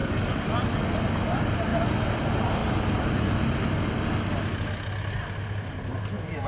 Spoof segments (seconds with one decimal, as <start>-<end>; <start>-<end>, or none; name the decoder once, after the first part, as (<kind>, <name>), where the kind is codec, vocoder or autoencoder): 0.0-0.5 (codec, DAC)